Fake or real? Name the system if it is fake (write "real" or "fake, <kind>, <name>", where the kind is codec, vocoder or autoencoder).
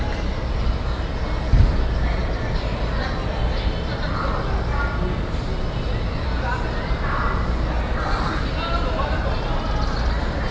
real